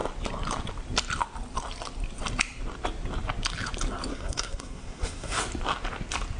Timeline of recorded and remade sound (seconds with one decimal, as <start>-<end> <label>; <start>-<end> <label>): 0.0-4.1 recorded; 4.1-5.4 remade; 5.4-6.4 recorded